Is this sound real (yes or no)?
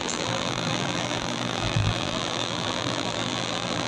no